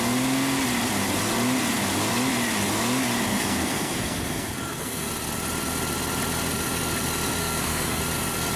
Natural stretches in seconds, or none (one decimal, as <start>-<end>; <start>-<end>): 0.0-3.3; 5.1-7.4; 8.0-8.6